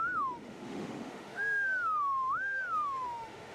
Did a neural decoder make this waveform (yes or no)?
yes